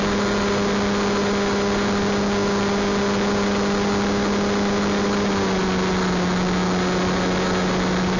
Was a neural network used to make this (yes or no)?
no